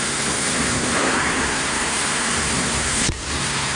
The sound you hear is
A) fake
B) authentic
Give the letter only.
A